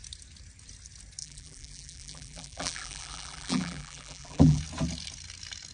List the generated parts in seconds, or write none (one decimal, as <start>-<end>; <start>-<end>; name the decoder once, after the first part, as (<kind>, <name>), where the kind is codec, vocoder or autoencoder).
1.2-4.6 (vocoder, BigVGAN v2)